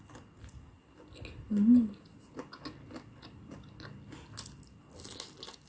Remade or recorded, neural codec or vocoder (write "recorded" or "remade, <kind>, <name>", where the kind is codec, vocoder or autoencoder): recorded